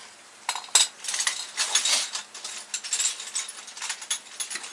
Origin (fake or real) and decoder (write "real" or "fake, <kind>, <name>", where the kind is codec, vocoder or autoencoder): real